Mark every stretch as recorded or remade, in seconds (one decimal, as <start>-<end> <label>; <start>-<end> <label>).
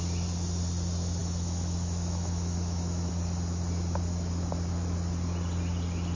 0.0-1.2 recorded; 1.2-3.1 remade; 3.1-6.2 recorded